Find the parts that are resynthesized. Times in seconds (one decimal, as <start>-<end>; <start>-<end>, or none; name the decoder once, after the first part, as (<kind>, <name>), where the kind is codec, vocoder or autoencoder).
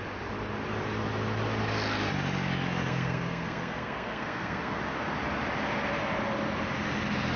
2.9-4.8 (codec, SNAC)